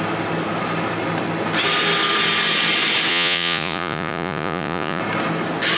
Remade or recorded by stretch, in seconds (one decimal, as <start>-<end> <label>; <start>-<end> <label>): 0.0-3.1 recorded; 3.1-5.0 remade; 5.0-5.8 recorded